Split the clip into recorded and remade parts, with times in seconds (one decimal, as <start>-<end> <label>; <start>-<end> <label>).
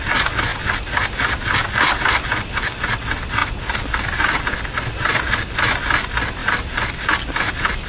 0.0-0.5 recorded; 0.5-1.9 remade; 1.9-3.4 recorded; 3.4-4.4 remade; 4.4-7.9 recorded